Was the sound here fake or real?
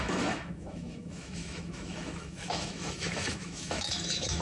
fake